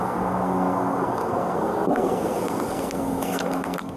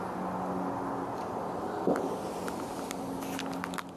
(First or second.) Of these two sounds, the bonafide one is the second